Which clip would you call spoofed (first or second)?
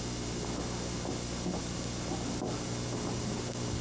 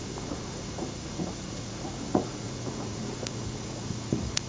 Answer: second